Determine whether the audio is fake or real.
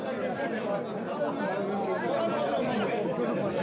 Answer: real